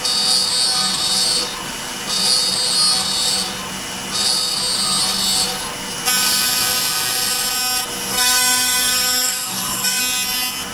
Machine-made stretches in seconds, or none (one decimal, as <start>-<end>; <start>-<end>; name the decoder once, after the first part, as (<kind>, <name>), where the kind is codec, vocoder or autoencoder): 8.1-10.0 (codec, SNAC)